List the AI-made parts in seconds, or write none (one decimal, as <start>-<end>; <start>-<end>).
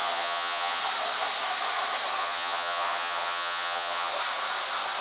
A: 0.0-0.8; 2.2-4.1